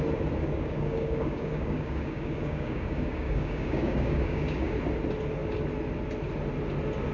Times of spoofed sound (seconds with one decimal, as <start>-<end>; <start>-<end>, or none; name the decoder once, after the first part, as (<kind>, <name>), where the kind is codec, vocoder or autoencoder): 0.4-4.7 (codec, DAC)